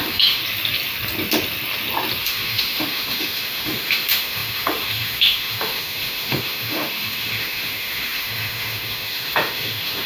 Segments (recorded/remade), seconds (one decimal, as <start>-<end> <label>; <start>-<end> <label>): 0.0-0.4 remade; 0.4-2.2 recorded; 2.2-10.1 remade